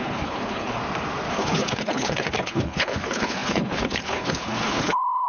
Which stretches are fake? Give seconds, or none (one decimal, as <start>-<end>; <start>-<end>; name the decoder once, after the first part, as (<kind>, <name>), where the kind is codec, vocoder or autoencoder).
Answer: 0.0-0.8 (codec, HILCodec); 1.3-5.3